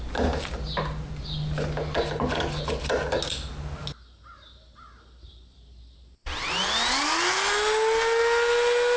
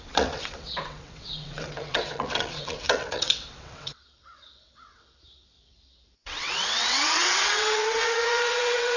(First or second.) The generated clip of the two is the second